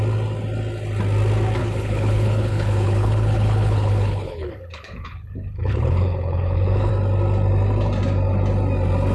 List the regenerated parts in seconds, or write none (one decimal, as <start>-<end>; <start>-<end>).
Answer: 1.6-6.9